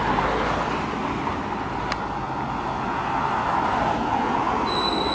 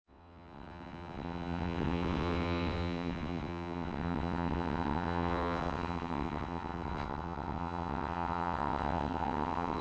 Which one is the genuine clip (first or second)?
first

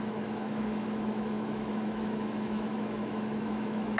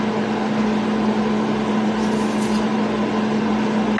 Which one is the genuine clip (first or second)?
second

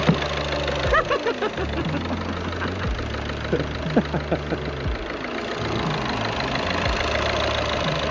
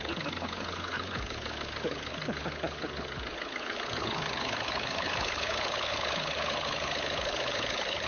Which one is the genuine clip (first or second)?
first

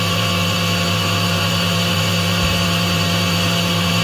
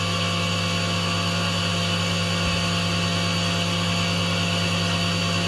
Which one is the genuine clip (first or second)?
second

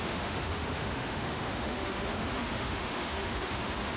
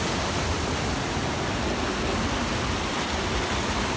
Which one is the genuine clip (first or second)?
second